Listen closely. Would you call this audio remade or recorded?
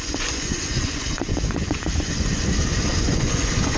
remade